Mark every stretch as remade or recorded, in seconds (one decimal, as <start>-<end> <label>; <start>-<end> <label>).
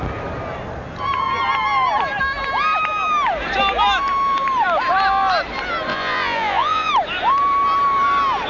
0.0-5.9 recorded; 5.9-6.9 remade; 6.9-8.5 recorded